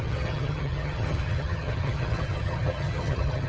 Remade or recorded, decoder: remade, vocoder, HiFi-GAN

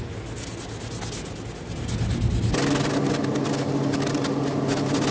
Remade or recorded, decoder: recorded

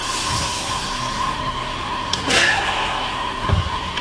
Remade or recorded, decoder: remade, codec, SNAC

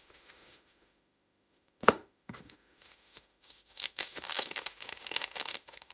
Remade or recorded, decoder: remade, autoencoder, DAC-VAE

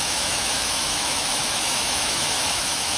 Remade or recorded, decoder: remade, autoencoder, DAC-VAE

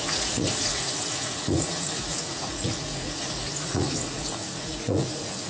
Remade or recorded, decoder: remade, vocoder, Vocos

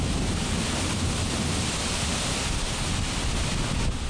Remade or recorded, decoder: recorded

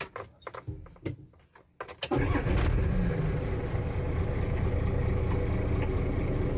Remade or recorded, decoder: recorded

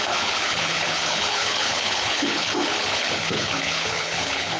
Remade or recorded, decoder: remade, codec, HILCodec